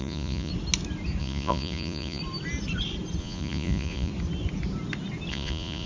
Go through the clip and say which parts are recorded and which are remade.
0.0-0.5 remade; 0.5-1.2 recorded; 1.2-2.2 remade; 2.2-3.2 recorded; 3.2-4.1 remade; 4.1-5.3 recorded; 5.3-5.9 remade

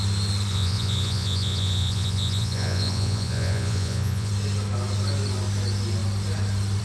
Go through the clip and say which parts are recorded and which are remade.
0.0-0.5 recorded; 0.5-4.3 remade; 4.3-6.8 recorded

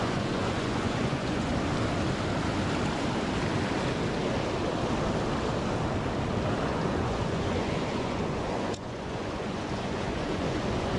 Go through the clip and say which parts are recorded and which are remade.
0.0-1.5 remade; 1.5-6.6 recorded; 6.6-11.0 remade

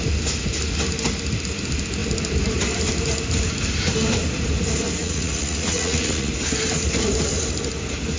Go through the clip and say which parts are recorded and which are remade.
0.0-5.0 recorded; 5.0-6.3 remade; 6.3-8.2 recorded

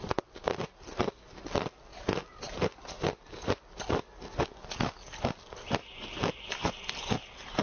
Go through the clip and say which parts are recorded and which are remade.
0.0-7.6 recorded

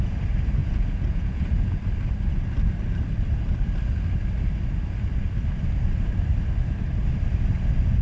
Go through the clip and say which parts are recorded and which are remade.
0.0-0.6 recorded; 0.6-1.8 remade; 1.8-8.0 recorded